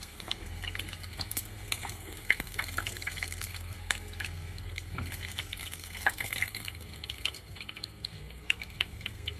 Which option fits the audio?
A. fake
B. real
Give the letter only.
A